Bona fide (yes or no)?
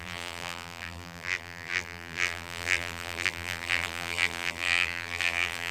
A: no